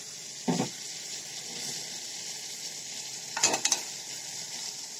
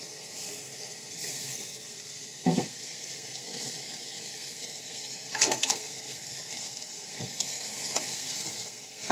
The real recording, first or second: first